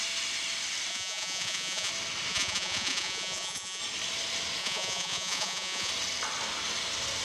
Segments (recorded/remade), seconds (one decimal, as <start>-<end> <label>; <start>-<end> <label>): 0.0-0.9 recorded; 0.9-1.9 remade; 1.9-2.3 recorded; 2.3-3.8 remade; 3.8-4.6 recorded; 4.6-5.9 remade; 5.9-7.2 recorded